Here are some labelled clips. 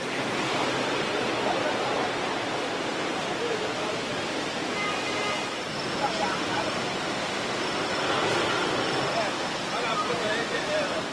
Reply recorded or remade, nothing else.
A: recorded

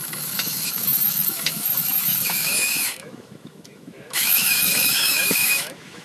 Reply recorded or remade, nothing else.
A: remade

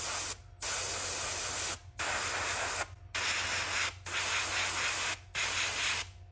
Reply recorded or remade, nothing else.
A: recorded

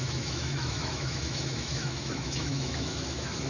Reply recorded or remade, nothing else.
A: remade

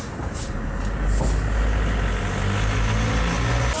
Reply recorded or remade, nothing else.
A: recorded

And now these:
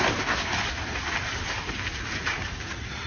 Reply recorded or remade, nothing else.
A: recorded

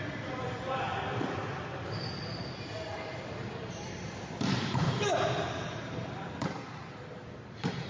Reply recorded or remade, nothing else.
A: remade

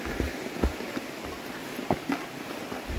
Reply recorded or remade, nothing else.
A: recorded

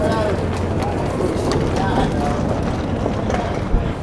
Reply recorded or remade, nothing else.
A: recorded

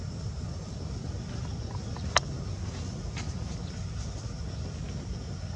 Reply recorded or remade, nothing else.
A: recorded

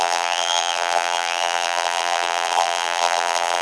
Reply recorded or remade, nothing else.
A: remade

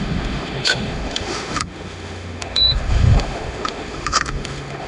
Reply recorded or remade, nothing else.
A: remade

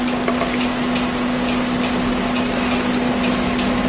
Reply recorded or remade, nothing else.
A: recorded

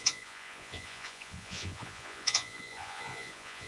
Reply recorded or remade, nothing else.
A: remade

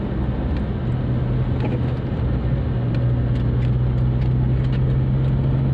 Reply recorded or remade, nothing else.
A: recorded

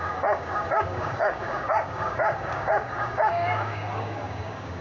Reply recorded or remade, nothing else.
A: remade